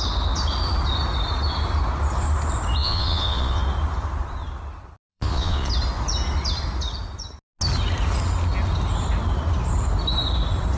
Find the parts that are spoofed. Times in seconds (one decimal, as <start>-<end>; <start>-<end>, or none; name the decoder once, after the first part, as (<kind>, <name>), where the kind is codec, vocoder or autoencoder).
2.8-3.6 (vocoder, Vocos); 5.1-5.7